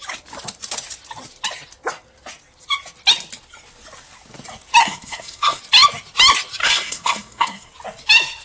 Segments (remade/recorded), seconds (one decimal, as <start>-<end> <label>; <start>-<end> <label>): 0.0-4.8 recorded; 4.8-5.6 remade; 5.6-6.6 recorded; 6.6-7.7 remade; 7.7-8.4 recorded